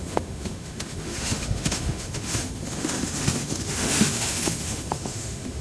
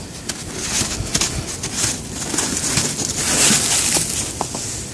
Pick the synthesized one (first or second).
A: first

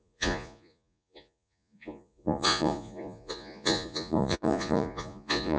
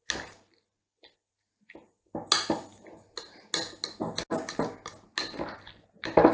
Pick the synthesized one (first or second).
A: first